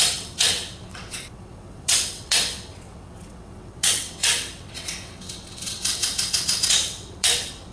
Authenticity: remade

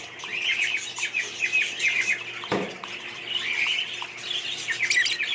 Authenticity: recorded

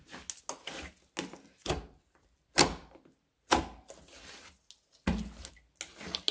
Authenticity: recorded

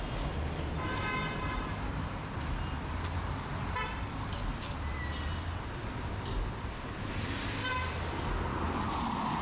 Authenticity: recorded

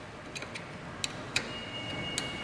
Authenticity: recorded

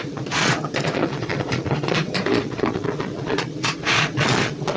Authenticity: remade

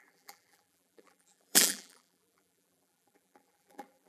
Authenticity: remade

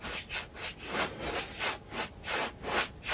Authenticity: recorded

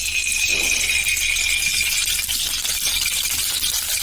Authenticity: recorded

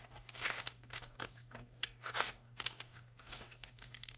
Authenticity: remade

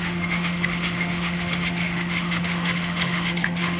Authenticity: remade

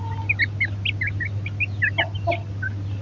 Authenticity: recorded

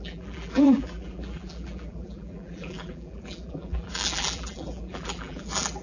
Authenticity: remade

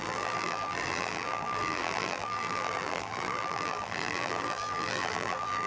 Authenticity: remade